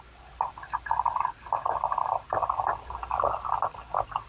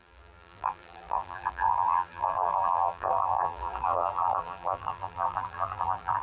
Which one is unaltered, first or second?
first